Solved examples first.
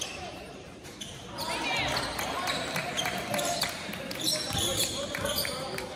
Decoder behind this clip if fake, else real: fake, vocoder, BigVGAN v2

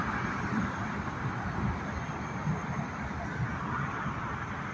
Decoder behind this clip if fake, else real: real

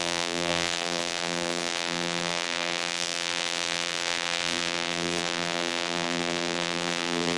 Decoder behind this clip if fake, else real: fake, vocoder, BigVGAN v2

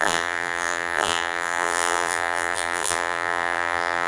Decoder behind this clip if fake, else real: fake, vocoder, BigVGAN v2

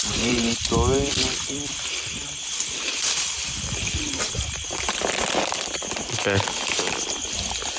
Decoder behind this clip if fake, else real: fake, vocoder, BigVGAN v2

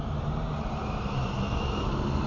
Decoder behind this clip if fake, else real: fake, vocoder, BigVGAN v2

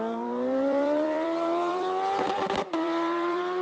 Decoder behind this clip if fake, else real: fake, vocoder, BigVGAN v2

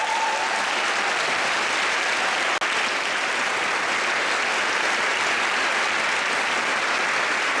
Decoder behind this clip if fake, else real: real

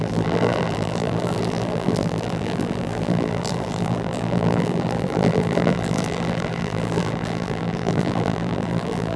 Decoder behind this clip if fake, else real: fake, vocoder, BigVGAN v2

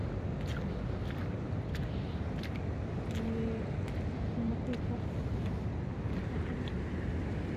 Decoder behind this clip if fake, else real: real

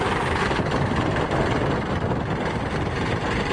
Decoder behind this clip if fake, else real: real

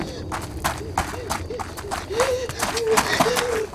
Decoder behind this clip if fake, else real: real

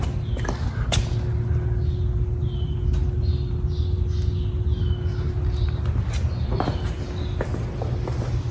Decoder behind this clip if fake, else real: real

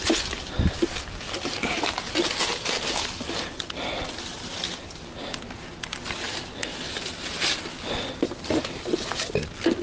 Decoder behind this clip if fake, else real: real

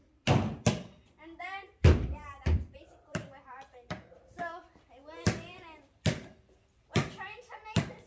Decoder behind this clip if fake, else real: fake, vocoder, BigVGAN v2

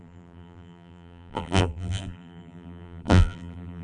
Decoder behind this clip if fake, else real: fake, vocoder, BigVGAN v2